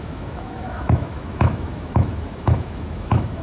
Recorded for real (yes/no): no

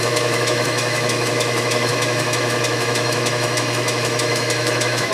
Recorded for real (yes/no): no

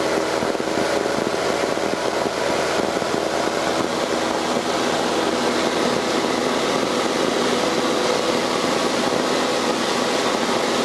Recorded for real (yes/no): yes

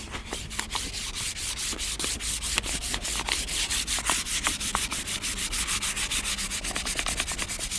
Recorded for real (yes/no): yes